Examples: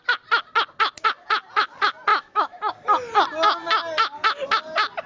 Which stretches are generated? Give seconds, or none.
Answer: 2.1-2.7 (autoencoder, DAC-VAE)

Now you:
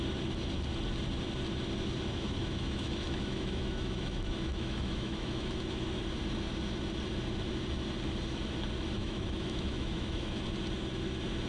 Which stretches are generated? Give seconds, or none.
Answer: 2.4-6.0 (autoencoder, DAC-VAE); 9.0-10.4

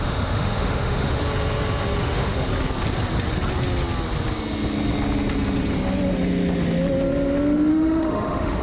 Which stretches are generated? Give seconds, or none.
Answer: 0.0-1.2 (autoencoder, DAC-VAE); 2.0-2.5; 7.7-8.6

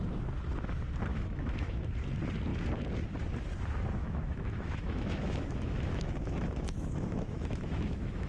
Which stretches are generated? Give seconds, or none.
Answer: 1.1-1.9 (autoencoder, DAC-VAE); 4.0-8.3

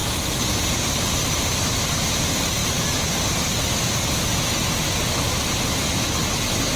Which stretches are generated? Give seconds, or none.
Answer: none

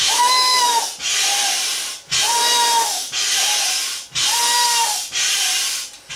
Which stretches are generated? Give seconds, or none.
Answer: 0.0-0.7 (autoencoder, DAC-VAE)